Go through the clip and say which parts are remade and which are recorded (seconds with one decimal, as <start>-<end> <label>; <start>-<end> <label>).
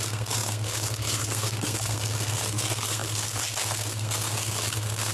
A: 0.0-5.1 remade